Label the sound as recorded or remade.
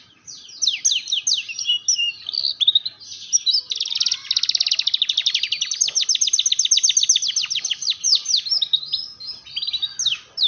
recorded